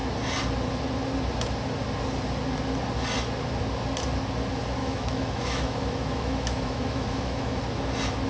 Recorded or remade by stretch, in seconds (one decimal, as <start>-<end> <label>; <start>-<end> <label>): 0.0-4.8 recorded; 4.8-7.6 remade; 7.6-8.3 recorded